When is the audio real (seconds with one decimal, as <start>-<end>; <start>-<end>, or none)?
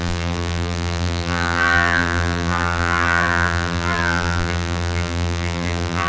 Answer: none